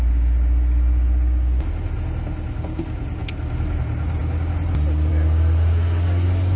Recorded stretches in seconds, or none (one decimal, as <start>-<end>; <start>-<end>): 0.0-6.6